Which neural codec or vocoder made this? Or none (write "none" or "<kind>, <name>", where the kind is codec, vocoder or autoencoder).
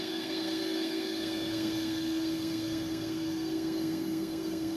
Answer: codec, SNAC